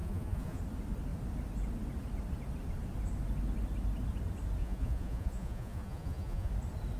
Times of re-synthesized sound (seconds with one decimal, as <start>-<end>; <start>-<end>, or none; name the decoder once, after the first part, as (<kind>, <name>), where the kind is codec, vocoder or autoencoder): 0.0-0.6 (vocoder, Vocos); 4.6-6.5